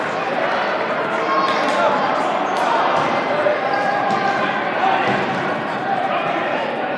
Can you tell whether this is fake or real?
real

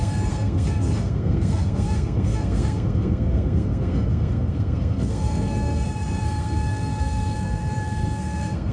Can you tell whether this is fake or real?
fake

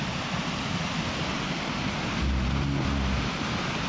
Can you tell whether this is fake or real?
real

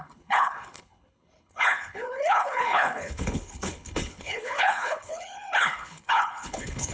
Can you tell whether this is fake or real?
fake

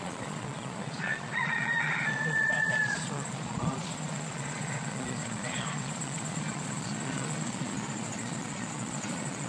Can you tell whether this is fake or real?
fake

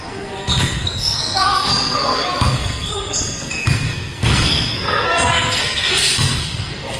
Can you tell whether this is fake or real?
fake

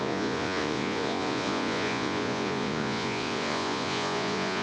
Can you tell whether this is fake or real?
fake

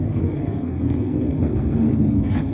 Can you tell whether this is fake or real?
fake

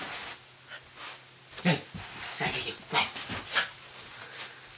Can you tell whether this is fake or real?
real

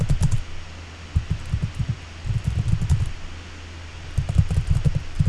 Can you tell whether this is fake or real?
real